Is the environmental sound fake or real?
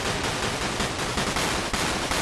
real